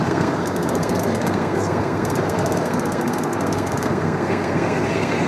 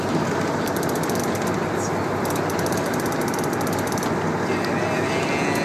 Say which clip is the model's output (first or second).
first